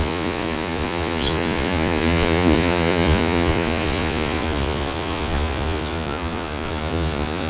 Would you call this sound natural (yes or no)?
no